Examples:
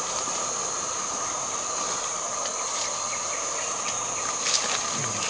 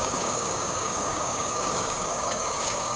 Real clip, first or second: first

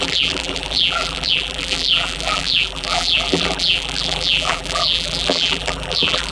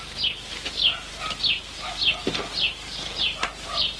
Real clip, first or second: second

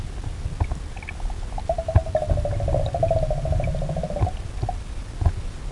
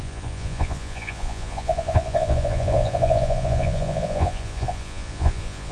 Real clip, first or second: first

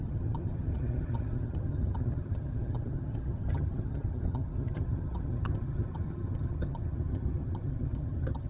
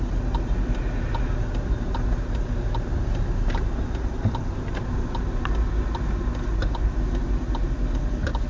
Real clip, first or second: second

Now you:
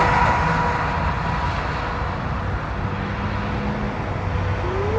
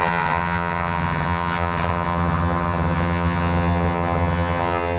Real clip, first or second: first